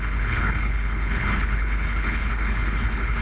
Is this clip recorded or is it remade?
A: remade